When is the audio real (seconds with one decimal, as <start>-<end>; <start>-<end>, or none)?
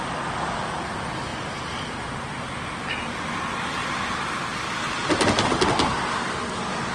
0.0-1.3; 2.4-3.8; 4.7-6.9